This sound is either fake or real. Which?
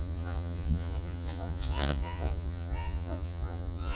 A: fake